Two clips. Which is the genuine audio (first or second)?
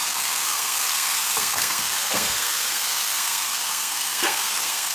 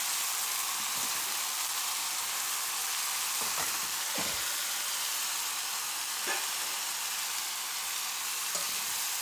second